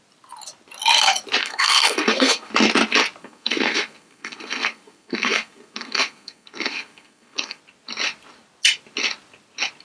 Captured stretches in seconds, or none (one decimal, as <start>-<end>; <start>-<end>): 0.0-1.4; 2.5-3.2; 7.6-9.8

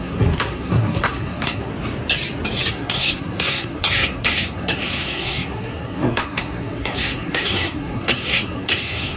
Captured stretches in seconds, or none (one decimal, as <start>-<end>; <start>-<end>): 1.7-2.7

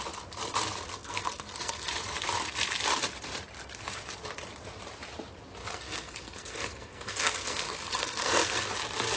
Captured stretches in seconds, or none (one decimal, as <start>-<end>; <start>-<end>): 0.0-0.9; 1.9-5.6; 8.7-9.2

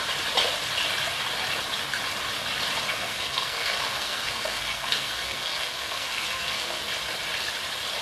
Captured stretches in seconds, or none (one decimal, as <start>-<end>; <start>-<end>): 0.0-2.9; 6.8-8.0

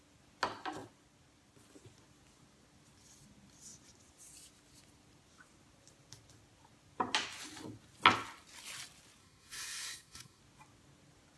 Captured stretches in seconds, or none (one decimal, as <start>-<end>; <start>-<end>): 0.0-9.2; 10.4-11.4

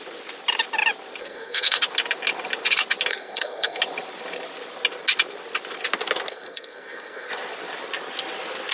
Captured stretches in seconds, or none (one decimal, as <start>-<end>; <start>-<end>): 0.0-1.2; 1.8-3.1; 3.8-6.3; 7.3-8.7

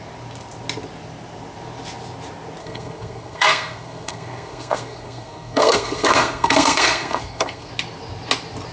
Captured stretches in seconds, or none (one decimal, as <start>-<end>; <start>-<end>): 0.0-2.6; 7.7-8.7

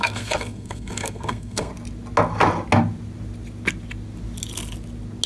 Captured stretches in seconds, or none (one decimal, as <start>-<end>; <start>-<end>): 1.7-5.3